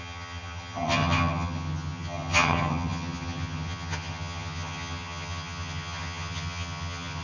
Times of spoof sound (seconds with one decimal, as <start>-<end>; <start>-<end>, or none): 0.0-7.2